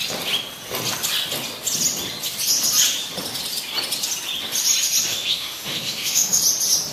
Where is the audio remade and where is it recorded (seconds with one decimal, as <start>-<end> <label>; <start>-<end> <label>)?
0.0-5.1 recorded; 5.1-6.4 remade; 6.4-6.9 recorded